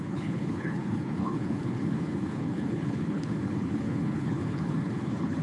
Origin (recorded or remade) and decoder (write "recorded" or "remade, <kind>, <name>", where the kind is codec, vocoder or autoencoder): remade, codec, HILCodec